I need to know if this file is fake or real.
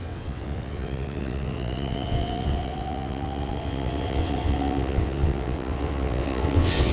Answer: fake